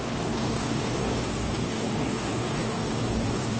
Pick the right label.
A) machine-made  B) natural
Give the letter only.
A